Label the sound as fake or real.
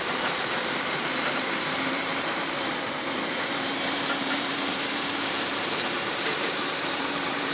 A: fake